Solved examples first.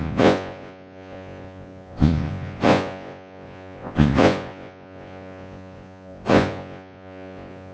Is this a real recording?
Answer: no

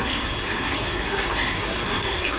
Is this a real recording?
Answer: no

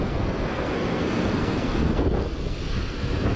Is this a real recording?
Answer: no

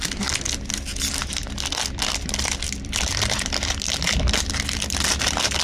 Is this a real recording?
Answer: no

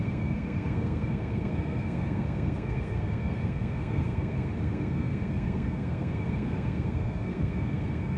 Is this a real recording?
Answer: no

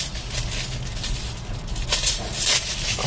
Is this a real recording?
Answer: yes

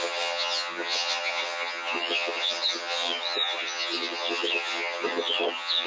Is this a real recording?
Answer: no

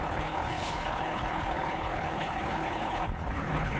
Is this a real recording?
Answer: no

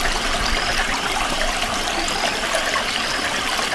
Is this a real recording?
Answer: yes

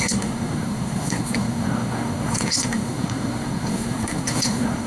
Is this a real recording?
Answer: no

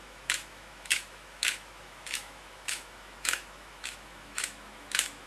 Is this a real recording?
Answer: no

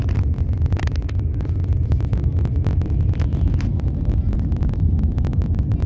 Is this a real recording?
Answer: yes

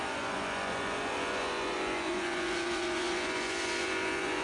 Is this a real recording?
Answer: no